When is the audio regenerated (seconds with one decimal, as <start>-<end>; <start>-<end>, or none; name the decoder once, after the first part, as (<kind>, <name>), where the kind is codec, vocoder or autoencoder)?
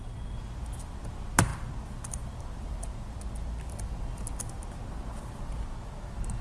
none